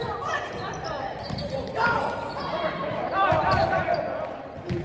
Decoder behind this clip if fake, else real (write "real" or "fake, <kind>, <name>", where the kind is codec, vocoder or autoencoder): fake, vocoder, BigVGAN v2